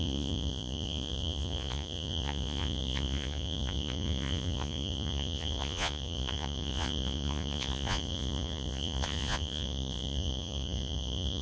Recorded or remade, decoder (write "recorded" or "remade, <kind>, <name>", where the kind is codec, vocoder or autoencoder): remade, vocoder, Vocos